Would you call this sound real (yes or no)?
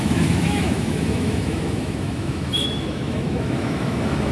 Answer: no